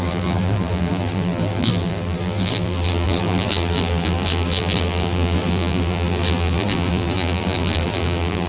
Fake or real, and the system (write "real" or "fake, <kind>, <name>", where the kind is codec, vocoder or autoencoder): fake, vocoder, BigVGAN v2